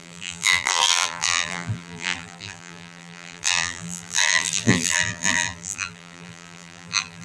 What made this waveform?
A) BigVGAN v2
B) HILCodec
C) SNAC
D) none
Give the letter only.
A